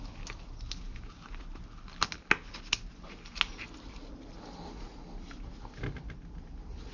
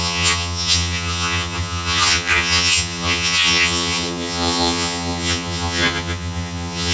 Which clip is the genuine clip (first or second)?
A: first